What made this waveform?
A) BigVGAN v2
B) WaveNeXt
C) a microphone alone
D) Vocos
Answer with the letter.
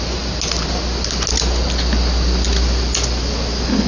C